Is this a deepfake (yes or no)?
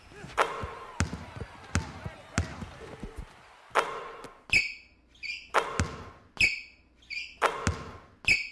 no